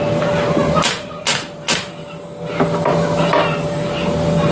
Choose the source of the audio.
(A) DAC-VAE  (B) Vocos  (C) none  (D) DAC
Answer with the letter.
C